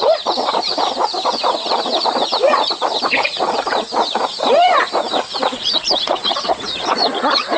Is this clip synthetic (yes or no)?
yes